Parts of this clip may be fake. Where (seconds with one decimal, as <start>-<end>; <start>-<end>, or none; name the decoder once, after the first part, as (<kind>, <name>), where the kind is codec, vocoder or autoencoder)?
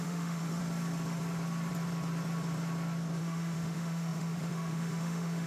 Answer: 0.0-0.6 (autoencoder, DAC-VAE); 3.2-5.5